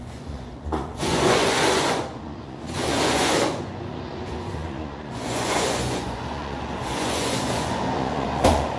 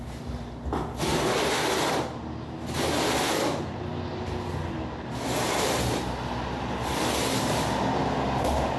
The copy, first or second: first